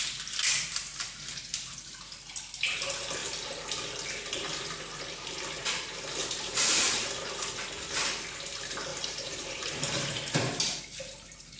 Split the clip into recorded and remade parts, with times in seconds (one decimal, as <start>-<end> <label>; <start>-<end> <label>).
0.0-6.2 recorded; 6.2-7.1 remade; 7.1-8.9 recorded; 8.9-10.8 remade; 10.8-11.6 recorded

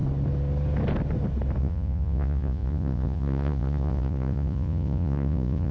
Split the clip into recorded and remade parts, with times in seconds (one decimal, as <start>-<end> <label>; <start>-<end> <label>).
0.0-1.6 recorded; 1.6-5.7 remade

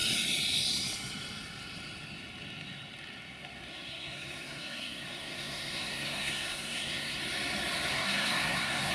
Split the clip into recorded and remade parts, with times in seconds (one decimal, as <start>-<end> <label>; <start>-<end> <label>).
0.0-3.7 recorded; 3.7-7.2 remade; 7.2-7.9 recorded; 7.9-8.9 remade

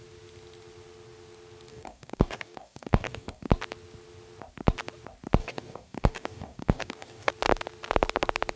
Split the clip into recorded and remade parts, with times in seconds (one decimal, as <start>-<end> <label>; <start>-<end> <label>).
0.0-1.7 recorded; 1.7-3.5 remade; 3.5-5.4 recorded; 5.4-7.3 remade; 7.3-8.6 recorded

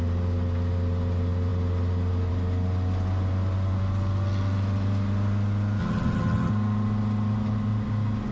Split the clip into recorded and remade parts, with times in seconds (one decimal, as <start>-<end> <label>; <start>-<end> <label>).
0.0-5.8 recorded; 5.8-6.5 remade; 6.5-8.3 recorded

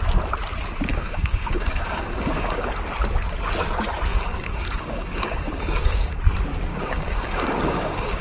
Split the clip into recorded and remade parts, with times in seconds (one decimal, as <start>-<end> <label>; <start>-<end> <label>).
0.0-0.9 recorded; 0.9-2.8 remade; 2.8-4.1 recorded; 4.1-6.2 remade; 6.2-6.7 recorded; 6.7-8.2 remade

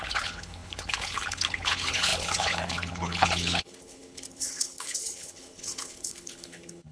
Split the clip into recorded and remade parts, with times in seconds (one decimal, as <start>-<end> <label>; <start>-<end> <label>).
0.0-6.9 remade

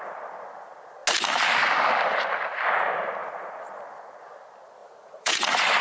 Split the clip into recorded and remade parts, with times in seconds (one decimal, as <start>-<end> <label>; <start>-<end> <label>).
0.0-3.2 recorded; 3.2-4.2 remade; 4.2-4.8 recorded; 4.8-5.8 remade